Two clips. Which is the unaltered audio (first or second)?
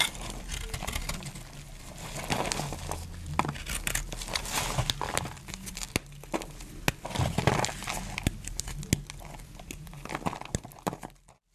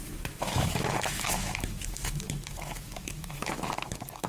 first